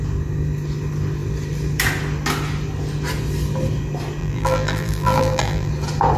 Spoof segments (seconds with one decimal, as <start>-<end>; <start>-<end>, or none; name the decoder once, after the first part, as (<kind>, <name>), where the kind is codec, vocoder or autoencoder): 4.2-5.7 (vocoder, BigVGAN v2)